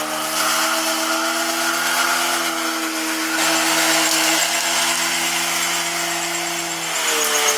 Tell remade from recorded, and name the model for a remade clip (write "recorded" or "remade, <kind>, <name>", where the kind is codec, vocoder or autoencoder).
recorded